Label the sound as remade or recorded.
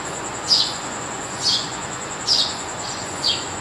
remade